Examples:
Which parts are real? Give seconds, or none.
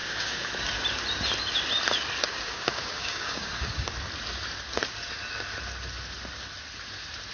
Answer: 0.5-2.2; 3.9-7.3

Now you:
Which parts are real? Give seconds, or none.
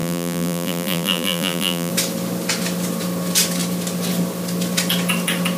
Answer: 1.9-5.6